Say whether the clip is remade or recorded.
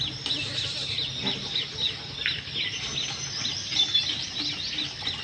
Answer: recorded